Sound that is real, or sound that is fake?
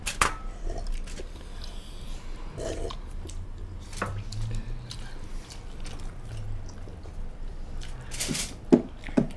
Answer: real